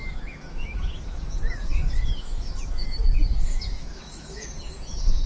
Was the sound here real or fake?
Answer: fake